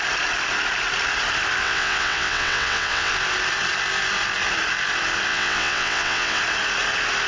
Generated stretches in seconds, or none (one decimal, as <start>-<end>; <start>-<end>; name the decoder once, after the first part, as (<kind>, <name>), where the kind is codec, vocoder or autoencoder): 1.6-3.1 (vocoder, WaveNeXt); 5.3-6.4